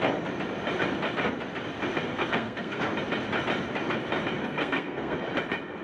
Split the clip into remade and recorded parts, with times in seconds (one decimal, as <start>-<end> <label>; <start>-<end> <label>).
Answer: 0.0-2.1 recorded; 2.1-2.8 remade; 2.8-4.4 recorded; 4.4-5.2 remade; 5.2-5.8 recorded